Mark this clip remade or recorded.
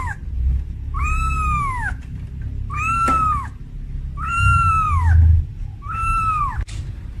recorded